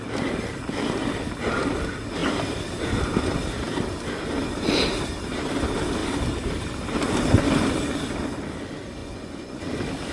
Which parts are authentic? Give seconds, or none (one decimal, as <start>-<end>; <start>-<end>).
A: 0.0-9.0; 9.6-10.1